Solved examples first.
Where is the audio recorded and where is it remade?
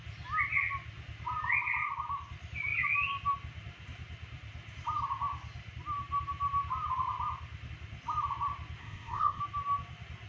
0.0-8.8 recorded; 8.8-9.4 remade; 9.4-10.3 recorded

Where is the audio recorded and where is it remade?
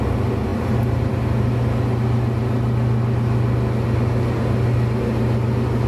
0.0-5.9 recorded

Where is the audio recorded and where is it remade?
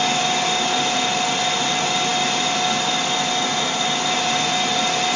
0.0-5.2 recorded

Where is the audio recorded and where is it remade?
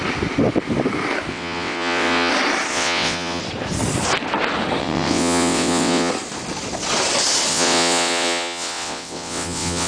0.0-1.3 recorded; 1.3-2.3 remade; 2.3-2.7 recorded; 2.7-3.4 remade; 3.4-4.8 recorded; 4.8-6.1 remade; 6.1-7.5 recorded; 7.5-9.9 remade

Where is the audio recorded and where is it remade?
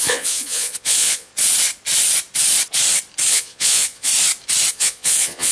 0.0-1.3 remade; 1.3-3.3 recorded; 3.3-4.1 remade; 4.1-4.7 recorded; 4.7-5.5 remade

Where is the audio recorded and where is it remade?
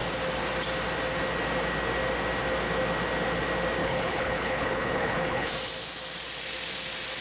0.0-3.8 recorded; 3.8-5.5 remade; 5.5-7.2 recorded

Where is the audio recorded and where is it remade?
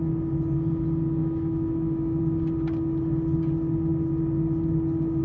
0.0-1.2 recorded; 1.2-2.2 remade; 2.2-5.2 recorded